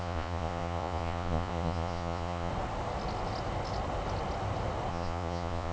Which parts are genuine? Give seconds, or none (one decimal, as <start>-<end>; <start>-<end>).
2.5-4.9